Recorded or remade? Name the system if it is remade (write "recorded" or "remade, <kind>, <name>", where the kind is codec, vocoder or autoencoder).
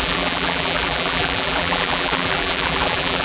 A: remade, vocoder, BigVGAN v2